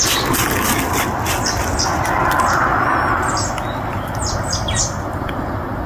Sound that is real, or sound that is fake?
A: real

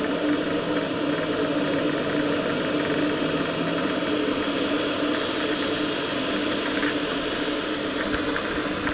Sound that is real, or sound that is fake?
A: real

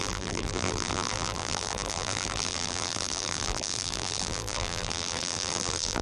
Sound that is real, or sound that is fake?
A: fake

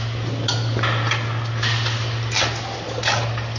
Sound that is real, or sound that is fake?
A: real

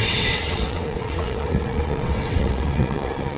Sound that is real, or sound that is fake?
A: fake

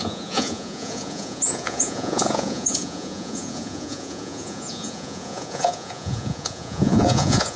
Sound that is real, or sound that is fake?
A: fake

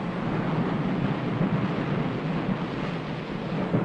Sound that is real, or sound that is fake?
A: real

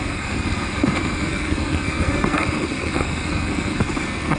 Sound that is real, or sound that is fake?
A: fake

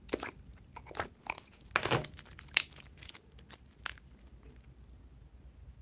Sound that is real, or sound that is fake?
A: real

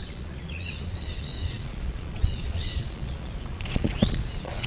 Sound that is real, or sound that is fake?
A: fake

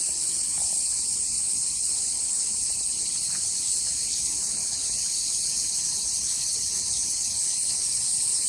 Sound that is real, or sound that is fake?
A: fake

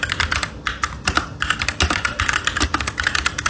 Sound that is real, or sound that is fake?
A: real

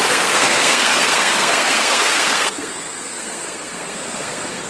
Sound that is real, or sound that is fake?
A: fake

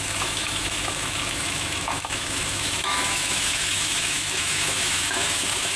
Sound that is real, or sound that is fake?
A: fake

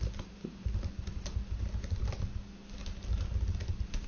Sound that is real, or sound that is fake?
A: real